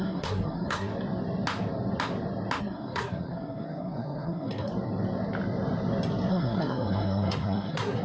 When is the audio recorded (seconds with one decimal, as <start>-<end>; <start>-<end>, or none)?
0.9-2.6; 4.7-6.3